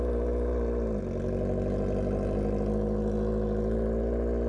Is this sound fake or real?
real